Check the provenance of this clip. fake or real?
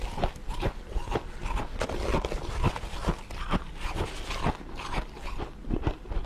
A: real